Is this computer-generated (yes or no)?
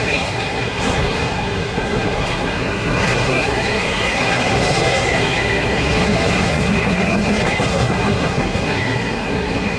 yes